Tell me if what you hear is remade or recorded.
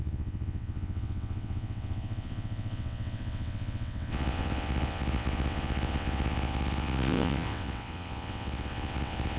remade